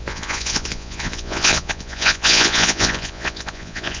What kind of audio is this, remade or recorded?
remade